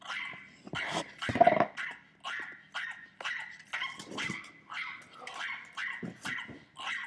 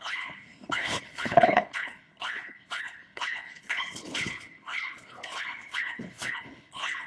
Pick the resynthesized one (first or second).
second